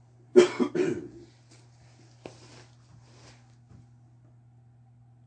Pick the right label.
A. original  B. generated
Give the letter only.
A